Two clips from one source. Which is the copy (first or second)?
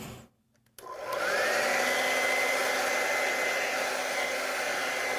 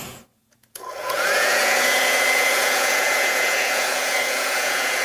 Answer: second